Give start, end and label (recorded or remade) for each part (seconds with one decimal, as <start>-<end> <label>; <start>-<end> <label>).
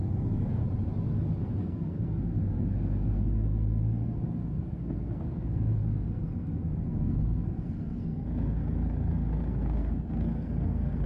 0.0-0.6 remade; 0.6-1.4 recorded; 1.4-11.1 remade